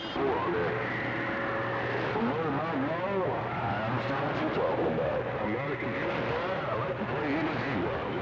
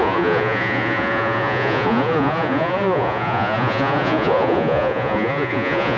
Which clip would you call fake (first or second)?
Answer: second